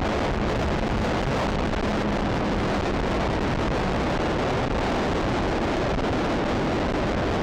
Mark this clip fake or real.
real